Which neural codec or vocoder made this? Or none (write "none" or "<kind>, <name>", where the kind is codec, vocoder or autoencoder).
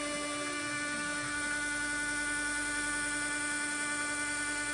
none